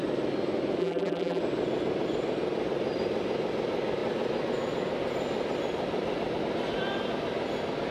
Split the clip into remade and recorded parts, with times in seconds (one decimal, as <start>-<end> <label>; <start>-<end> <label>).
0.0-0.8 recorded; 0.8-1.4 remade; 1.4-7.9 recorded